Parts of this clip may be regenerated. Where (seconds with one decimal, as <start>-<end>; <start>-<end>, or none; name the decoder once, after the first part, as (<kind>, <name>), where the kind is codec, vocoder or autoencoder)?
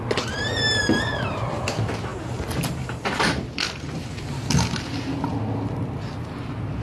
none